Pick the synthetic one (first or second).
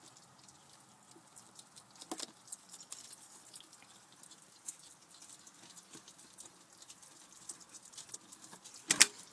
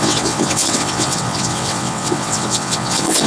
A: second